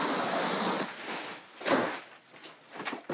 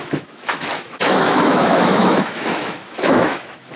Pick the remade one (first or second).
second